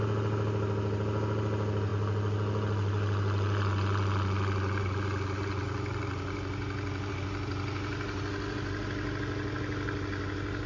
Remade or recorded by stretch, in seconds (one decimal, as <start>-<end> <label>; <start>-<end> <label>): 0.0-10.7 recorded